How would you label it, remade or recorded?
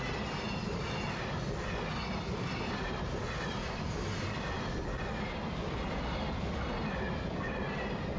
recorded